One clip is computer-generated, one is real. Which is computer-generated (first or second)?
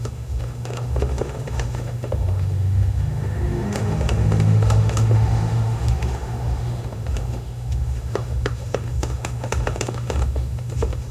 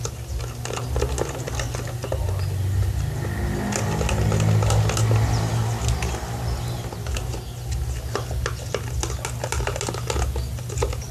first